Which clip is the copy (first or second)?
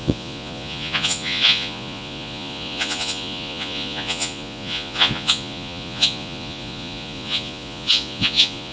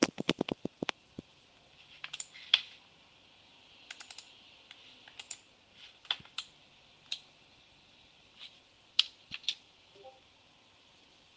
first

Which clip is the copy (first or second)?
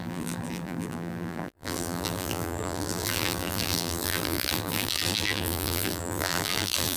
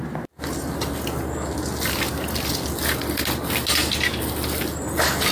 first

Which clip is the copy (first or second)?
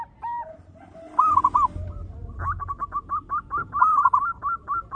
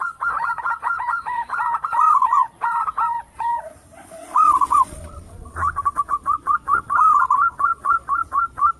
second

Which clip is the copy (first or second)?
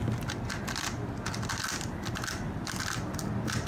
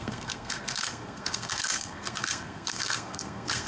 second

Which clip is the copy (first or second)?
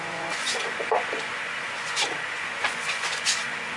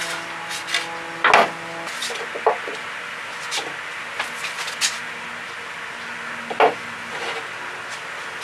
first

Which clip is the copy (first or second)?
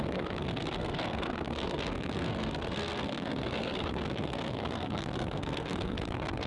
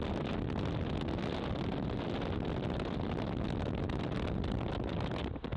first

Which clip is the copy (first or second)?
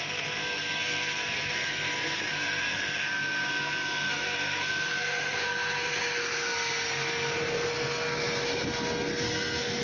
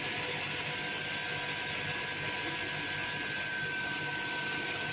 first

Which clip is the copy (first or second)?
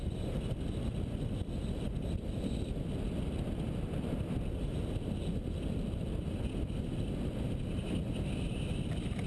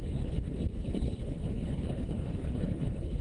second